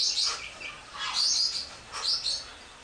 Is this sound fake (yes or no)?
no